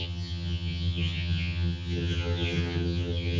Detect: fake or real fake